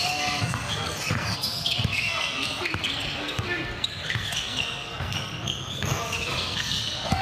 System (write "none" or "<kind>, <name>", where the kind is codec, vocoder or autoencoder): codec, SNAC